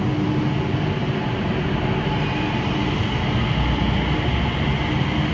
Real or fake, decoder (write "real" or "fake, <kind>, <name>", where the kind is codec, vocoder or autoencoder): real